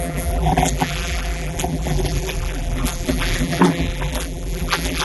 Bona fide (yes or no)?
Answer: no